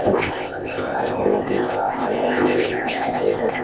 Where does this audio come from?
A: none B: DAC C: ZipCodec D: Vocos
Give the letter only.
C